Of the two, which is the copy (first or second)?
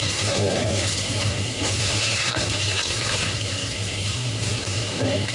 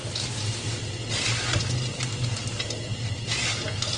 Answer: first